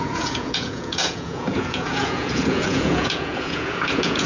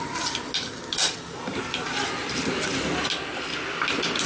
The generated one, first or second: first